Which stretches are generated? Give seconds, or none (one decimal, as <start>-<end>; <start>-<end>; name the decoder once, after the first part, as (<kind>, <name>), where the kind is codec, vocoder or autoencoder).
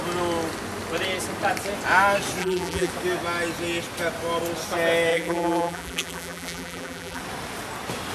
2.4-2.9 (vocoder, BigVGAN v2); 5.1-7.2